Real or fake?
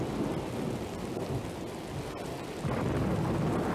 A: real